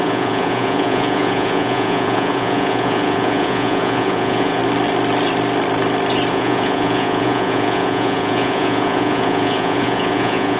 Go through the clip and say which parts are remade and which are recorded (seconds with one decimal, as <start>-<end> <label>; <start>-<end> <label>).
0.0-4.6 remade; 4.6-6.3 recorded; 6.3-10.6 remade